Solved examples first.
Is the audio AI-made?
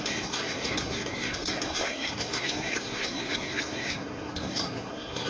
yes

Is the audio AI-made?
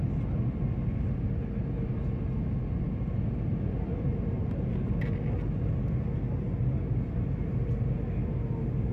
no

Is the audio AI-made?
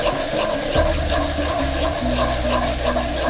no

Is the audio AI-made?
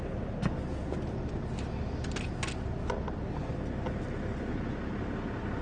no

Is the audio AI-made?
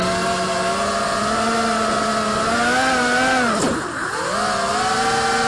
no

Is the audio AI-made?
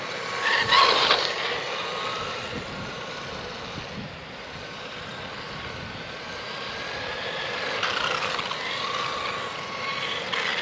no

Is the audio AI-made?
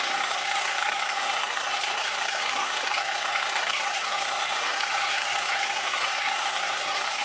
yes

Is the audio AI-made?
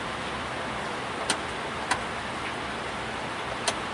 no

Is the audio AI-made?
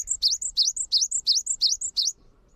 no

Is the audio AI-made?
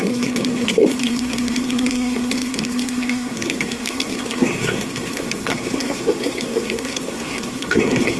yes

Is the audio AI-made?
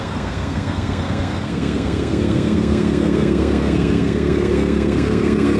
yes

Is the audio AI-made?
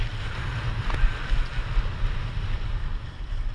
no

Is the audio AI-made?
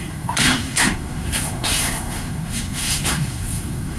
yes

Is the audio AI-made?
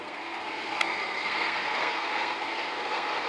yes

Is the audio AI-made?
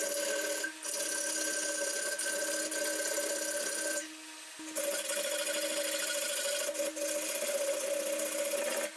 no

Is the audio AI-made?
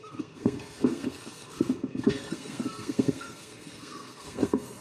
yes